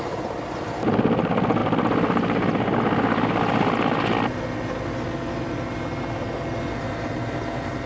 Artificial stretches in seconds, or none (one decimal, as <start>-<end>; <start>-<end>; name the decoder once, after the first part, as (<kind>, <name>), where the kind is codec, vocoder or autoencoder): none

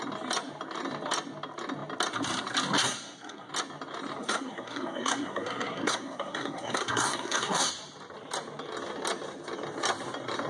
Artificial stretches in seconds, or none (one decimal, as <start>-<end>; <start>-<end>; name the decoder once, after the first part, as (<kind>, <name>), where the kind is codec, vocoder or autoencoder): 2.8-3.5 (codec, SNAC); 4.2-7.7

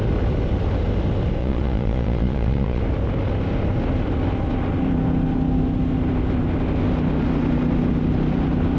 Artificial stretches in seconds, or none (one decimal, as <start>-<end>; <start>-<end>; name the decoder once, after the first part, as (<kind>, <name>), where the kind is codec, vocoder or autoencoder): 1.4-2.8 (vocoder, Vocos)

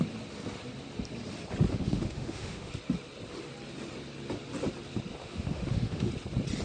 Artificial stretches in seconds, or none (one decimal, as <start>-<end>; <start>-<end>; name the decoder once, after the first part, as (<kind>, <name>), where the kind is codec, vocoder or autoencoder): 1.7-2.7 (autoencoder, DAC-VAE); 5.2-6.1

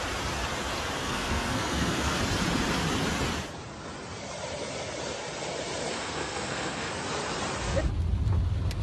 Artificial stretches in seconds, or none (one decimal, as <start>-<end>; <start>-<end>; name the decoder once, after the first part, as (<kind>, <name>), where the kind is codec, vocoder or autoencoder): 1.0-2.2 (codec, SNAC); 5.9-6.9

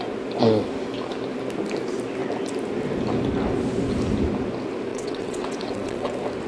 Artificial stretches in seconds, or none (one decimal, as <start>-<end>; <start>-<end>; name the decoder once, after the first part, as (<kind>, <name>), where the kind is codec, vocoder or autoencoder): 4.9-6.1 (vocoder, WaveNeXt)

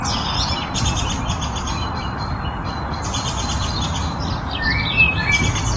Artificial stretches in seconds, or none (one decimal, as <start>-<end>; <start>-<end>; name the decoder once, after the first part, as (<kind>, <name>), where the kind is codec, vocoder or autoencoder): 1.8-5.3 (vocoder, BigVGAN v2)

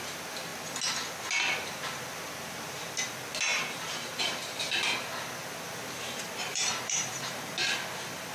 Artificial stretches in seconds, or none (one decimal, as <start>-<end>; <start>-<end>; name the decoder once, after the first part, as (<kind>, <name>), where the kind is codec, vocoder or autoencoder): 3.5-4.6 (vocoder, BigVGAN v2); 6.5-7.5